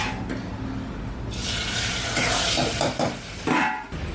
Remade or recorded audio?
recorded